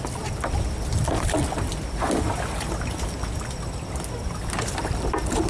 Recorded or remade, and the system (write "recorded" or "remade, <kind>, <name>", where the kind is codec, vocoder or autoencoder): recorded